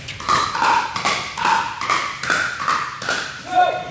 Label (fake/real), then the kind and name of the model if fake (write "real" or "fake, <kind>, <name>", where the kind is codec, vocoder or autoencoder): real